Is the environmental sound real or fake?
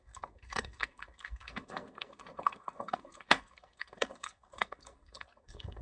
fake